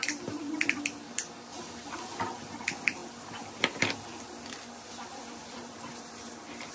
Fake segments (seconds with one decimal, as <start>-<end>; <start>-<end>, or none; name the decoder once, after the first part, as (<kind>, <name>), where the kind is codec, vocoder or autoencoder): none